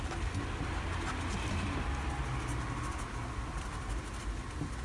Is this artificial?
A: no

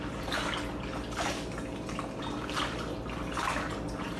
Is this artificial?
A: no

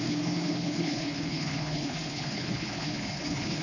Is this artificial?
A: yes